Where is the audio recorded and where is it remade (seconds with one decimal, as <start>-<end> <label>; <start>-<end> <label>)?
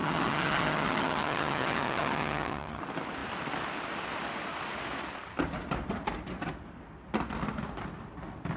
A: 0.0-2.8 remade; 2.8-8.6 recorded